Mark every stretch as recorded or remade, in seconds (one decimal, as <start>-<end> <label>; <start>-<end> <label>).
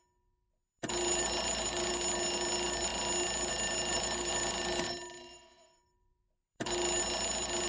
0.0-0.5 recorded; 0.5-1.9 remade; 1.9-3.9 recorded; 3.9-7.0 remade; 7.0-7.7 recorded